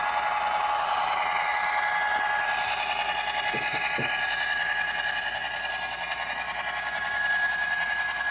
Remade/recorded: recorded